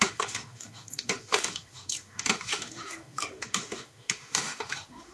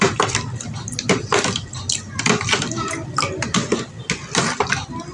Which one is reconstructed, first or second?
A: first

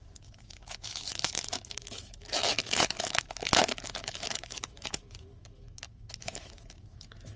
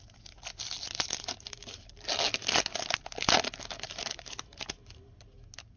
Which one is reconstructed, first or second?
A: first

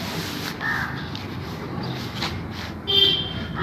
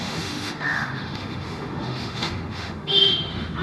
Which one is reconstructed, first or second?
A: second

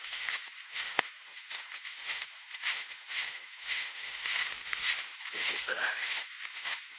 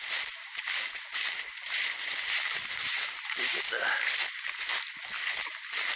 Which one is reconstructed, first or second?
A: first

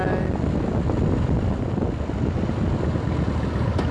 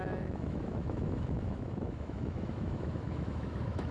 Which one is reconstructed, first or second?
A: second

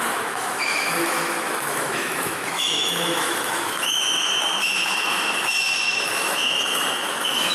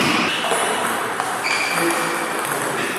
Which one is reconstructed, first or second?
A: first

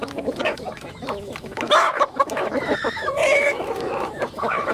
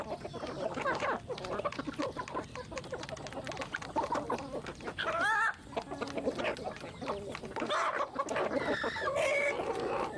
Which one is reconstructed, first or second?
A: first